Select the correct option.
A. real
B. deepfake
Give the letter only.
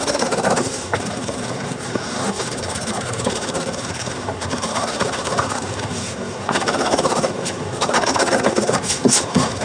B